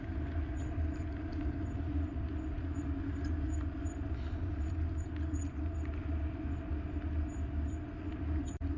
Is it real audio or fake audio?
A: real